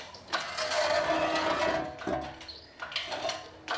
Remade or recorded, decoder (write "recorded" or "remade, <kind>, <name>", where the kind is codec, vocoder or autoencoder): recorded